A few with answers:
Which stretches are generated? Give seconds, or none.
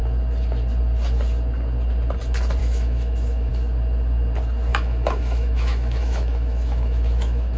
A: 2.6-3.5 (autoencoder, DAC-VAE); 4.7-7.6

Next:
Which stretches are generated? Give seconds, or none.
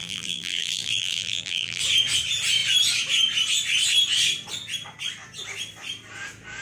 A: 0.0-1.8 (vocoder, BigVGAN v2)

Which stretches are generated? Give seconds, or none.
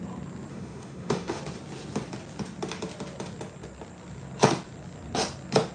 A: 0.5-1.4 (autoencoder, DAC-VAE)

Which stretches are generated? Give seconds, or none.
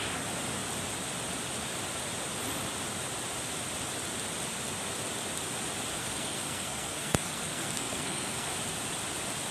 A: 6.0-8.5 (codec, SNAC)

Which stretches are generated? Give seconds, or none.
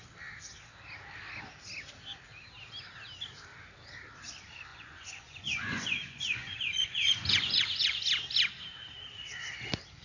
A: 4.7-8.0 (vocoder, Vocos)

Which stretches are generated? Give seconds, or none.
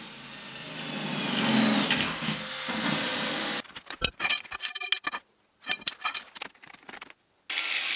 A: none